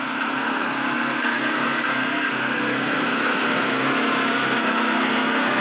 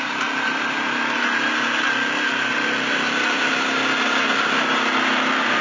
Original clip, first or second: second